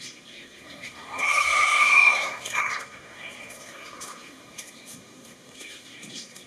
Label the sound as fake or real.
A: fake